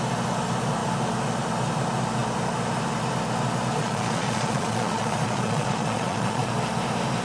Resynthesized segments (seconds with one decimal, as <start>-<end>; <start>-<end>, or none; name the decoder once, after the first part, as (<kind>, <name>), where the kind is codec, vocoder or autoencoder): 3.8-6.5 (vocoder, Vocos)